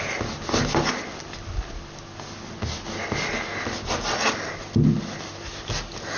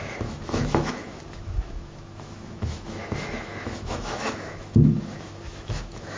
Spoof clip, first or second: second